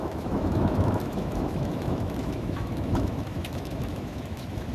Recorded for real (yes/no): no